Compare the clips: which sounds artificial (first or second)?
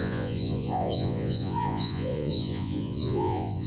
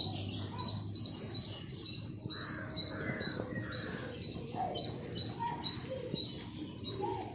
first